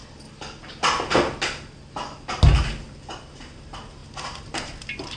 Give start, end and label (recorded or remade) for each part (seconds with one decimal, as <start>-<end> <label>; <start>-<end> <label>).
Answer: 0.0-3.1 recorded; 3.1-5.2 remade